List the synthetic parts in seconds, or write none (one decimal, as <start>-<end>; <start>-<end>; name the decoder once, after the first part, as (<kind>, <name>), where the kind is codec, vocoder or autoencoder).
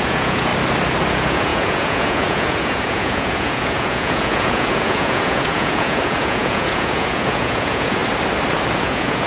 0.0-0.5 (vocoder, Vocos); 1.1-8.0; 8.8-9.3